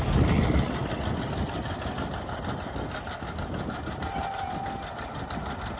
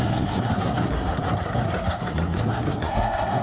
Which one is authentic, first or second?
first